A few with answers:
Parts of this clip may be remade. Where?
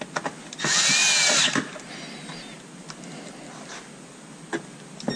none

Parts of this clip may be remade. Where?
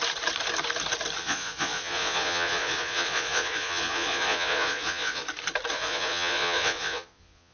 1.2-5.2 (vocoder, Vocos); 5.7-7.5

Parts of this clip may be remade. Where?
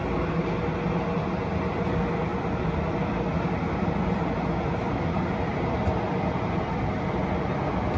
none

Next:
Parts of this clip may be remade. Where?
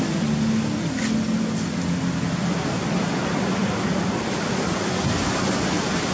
none